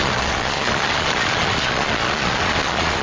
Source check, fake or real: fake